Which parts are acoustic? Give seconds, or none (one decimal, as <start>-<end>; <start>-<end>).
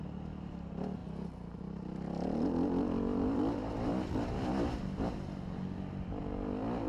0.0-6.9